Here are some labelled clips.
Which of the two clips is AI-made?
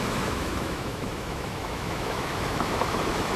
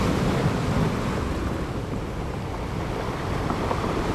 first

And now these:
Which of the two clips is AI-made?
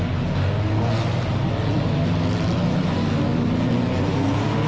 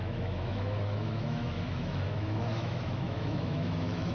second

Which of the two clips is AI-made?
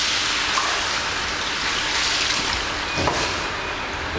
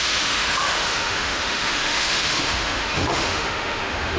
second